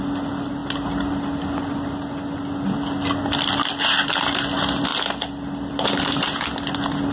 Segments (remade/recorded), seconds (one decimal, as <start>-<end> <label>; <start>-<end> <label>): 0.0-7.1 recorded